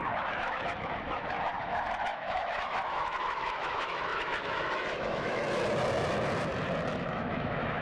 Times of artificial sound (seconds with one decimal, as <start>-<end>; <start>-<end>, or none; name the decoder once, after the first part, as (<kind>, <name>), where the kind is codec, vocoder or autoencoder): 0.0-5.4 (autoencoder, DAC-VAE); 7.0-7.8